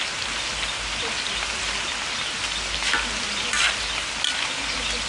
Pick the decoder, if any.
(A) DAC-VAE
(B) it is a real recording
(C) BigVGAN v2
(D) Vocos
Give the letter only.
B